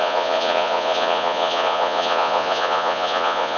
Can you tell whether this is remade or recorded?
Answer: remade